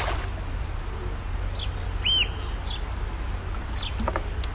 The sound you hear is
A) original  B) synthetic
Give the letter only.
A